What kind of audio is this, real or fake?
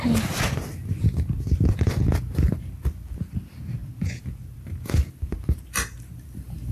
fake